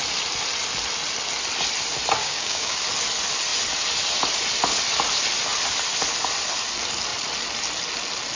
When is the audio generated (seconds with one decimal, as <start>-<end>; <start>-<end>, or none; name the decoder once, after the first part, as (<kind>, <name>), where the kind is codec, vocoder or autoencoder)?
2.2-2.8 (codec, DAC)